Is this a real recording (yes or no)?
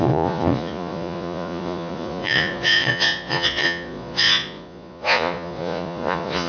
no